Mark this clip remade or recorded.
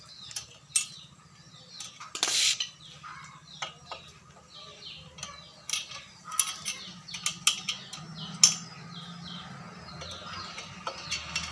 recorded